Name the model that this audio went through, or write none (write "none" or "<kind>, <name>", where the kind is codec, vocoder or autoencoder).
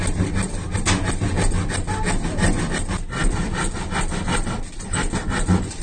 none